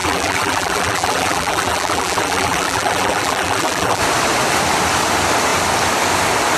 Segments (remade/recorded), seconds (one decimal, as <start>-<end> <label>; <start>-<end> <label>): 0.0-4.0 remade; 4.0-6.6 recorded